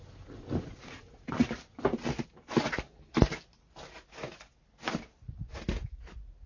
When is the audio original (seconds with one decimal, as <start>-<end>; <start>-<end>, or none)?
0.0-6.5